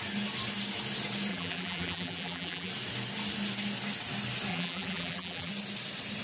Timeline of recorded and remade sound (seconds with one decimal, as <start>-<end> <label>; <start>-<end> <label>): 0.0-1.3 recorded; 1.3-2.7 remade; 2.7-4.5 recorded; 4.5-5.5 remade; 5.5-6.2 recorded